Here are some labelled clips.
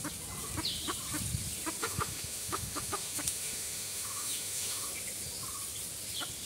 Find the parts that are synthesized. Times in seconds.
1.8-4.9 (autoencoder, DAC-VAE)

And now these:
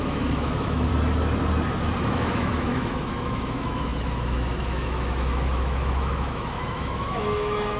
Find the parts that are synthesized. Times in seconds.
0.0-0.9 (autoencoder, DAC-VAE); 2.0-7.8